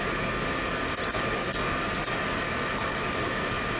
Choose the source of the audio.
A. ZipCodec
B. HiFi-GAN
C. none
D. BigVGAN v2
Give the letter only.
C